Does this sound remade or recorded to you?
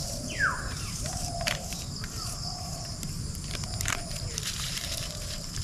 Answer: remade